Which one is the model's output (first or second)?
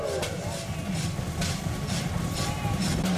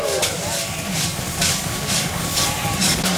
second